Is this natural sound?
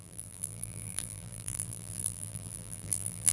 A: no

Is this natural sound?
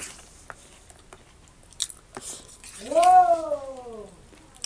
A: yes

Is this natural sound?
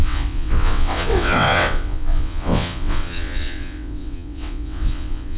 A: no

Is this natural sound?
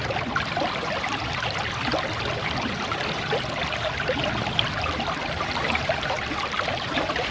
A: yes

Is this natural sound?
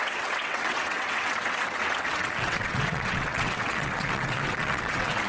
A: no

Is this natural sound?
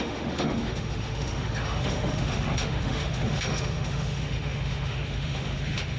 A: no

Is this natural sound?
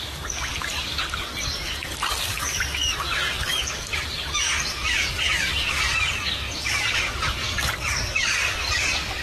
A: no